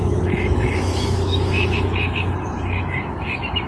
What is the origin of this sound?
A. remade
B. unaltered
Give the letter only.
A